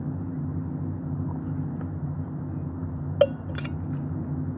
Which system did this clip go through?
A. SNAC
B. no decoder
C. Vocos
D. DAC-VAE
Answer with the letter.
B